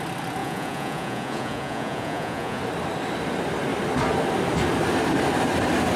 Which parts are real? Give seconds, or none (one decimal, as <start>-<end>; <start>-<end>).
0.0-0.4; 2.6-6.0